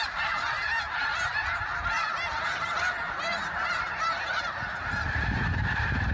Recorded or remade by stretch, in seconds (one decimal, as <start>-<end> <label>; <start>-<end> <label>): 0.0-6.1 remade

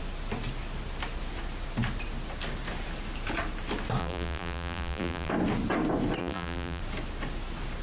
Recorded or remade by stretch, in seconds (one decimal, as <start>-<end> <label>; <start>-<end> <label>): 0.0-4.0 recorded; 4.0-5.3 remade; 5.3-6.2 recorded; 6.2-6.8 remade; 6.8-7.8 recorded

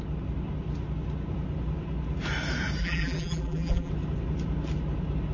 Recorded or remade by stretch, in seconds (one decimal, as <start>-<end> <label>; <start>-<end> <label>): 0.0-2.8 recorded; 2.8-3.9 remade; 3.9-5.3 recorded

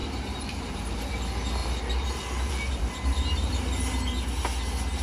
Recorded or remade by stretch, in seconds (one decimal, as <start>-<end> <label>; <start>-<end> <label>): 0.0-1.1 remade; 1.1-1.6 recorded; 1.6-3.5 remade; 3.5-5.0 recorded

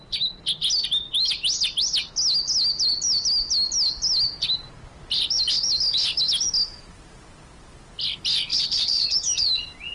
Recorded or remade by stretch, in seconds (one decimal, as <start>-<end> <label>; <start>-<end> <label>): 0.0-8.5 recorded; 8.5-9.5 remade; 9.5-9.9 recorded

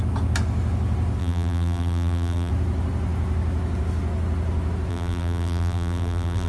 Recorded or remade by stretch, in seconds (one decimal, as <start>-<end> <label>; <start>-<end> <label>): 0.0-1.2 recorded; 1.2-2.5 remade; 2.5-4.9 recorded; 4.9-6.5 remade